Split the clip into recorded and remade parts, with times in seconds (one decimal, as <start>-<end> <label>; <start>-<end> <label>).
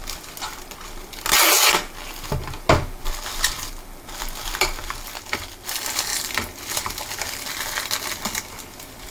0.0-9.1 recorded